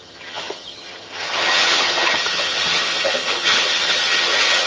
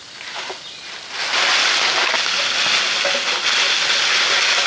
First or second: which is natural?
second